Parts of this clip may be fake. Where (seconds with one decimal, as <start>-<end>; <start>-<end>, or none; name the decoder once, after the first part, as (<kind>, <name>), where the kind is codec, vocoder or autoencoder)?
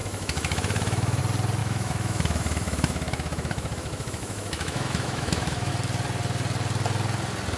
0.0-1.2 (autoencoder, DAC-VAE); 1.6-5.7